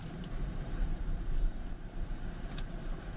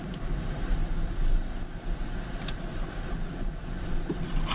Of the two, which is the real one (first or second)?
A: second